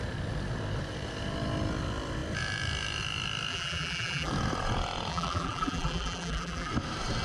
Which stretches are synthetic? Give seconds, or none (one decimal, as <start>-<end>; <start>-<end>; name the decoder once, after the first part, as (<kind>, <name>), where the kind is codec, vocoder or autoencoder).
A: 3.5-4.3 (vocoder, BigVGAN v2); 5.1-6.7